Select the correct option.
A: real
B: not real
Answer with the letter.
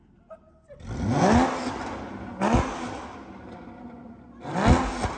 A